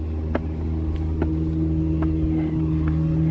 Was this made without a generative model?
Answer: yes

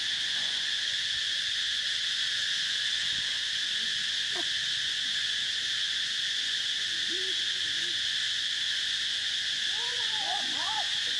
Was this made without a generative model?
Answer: no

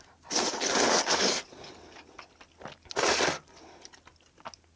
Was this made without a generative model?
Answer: yes